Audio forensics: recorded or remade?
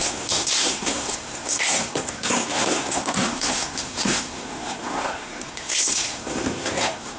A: remade